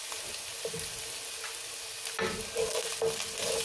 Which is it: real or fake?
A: real